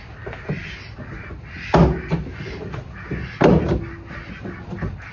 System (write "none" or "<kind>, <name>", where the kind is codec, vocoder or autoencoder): none